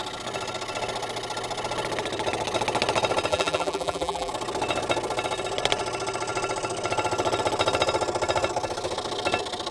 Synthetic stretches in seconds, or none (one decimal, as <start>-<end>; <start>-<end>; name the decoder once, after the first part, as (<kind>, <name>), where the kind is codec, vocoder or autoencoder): 3.3-4.3 (vocoder, BigVGAN v2)